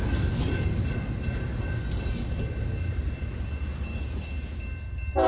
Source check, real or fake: real